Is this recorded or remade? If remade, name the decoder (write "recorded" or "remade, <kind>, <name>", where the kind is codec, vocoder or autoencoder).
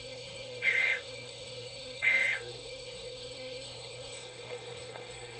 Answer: remade, codec, SNAC